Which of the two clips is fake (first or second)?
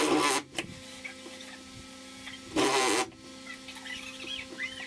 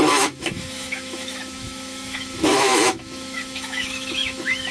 second